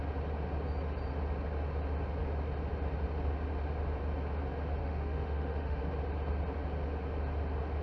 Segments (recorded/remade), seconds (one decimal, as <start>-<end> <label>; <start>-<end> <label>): 0.0-4.8 recorded; 4.8-5.8 remade; 5.8-7.8 recorded